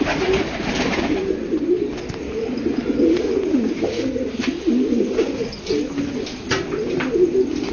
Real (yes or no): yes